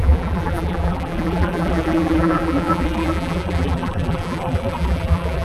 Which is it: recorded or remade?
remade